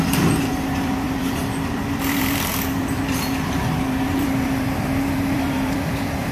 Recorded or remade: remade